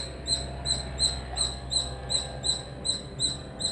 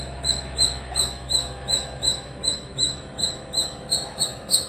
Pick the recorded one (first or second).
first